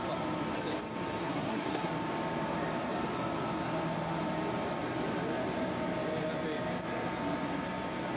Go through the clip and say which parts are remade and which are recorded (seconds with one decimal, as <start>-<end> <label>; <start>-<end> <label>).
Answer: 0.0-1.2 recorded; 1.2-1.9 remade; 1.9-8.2 recorded